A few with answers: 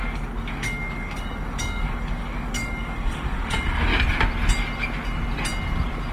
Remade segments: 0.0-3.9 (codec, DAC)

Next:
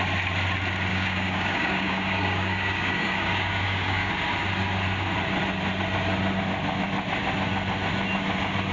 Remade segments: 0.9-4.1 (codec, DAC)